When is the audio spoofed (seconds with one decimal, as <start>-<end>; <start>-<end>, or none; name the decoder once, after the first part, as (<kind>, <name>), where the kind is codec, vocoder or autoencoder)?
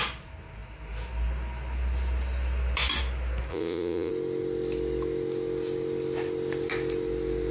3.5-4.1 (vocoder, Vocos)